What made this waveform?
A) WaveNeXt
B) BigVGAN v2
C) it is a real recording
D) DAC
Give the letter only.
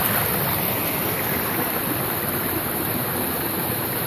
C